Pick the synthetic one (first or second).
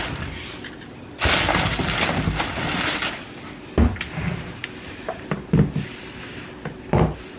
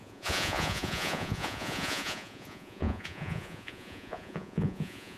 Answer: second